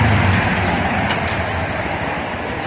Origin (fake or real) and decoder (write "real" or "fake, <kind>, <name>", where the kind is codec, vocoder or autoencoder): real